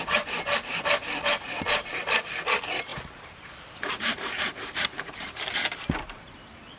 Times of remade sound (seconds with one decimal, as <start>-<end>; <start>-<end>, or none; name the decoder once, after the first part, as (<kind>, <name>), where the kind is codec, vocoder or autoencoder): 2.9-6.3 (vocoder, BigVGAN v2)